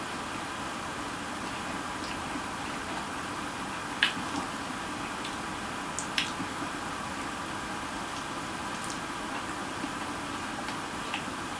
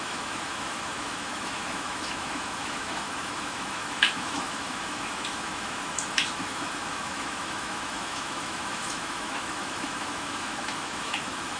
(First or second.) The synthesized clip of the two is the second